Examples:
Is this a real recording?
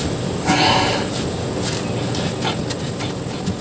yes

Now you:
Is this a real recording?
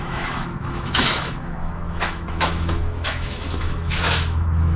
no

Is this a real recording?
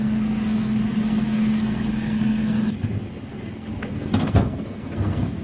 no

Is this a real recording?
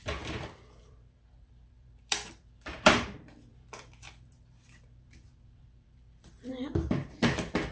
no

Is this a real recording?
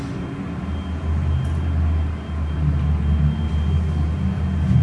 yes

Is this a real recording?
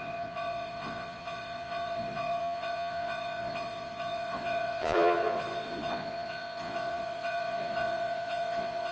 no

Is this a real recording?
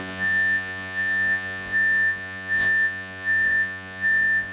no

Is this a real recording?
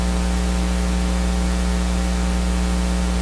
yes